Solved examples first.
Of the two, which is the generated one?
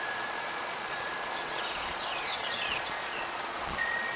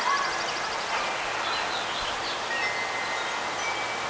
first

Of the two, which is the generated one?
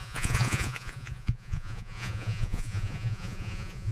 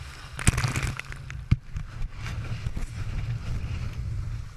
first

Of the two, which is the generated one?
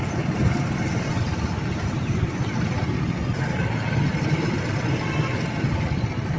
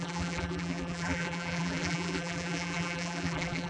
second